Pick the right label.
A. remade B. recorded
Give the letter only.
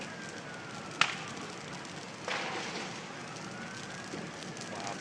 B